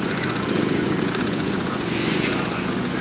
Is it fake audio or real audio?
fake